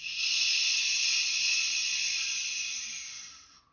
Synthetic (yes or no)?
no